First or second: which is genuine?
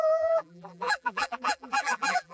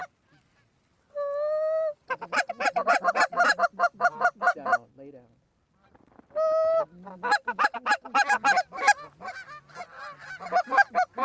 second